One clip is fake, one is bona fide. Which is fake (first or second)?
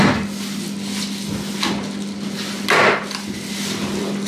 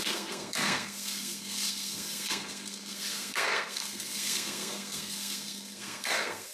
second